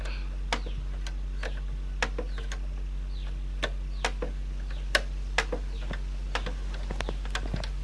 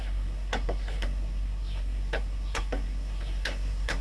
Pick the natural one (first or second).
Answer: first